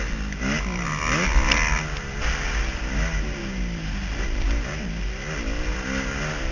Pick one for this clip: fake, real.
real